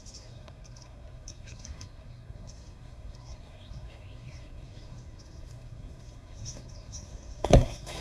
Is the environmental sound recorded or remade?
remade